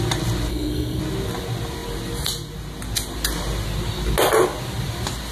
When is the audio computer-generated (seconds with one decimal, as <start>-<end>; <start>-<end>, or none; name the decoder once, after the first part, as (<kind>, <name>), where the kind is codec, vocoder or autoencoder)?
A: 0.5-1.0 (codec, SNAC)